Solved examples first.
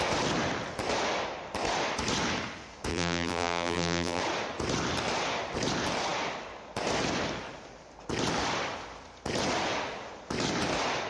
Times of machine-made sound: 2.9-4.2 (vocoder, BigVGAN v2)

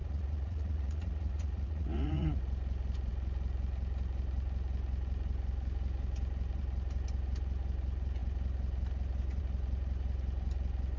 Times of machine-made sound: 0.0-2.4 (vocoder, Vocos)

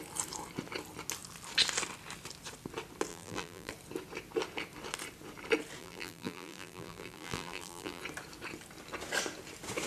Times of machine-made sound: 3.1-3.7 (vocoder, BigVGAN v2); 5.8-8.0

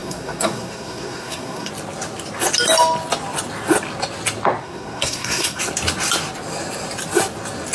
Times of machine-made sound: 0.0-1.7 (codec, SNAC); 4.6-5.6

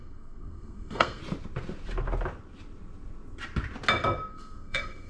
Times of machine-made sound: 0.0-1.2 (codec, SNAC); 4.3-5.1

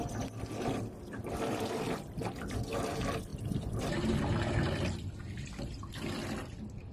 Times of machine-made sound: none

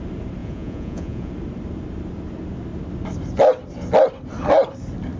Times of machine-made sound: 0.4-1.3 (vocoder, Vocos)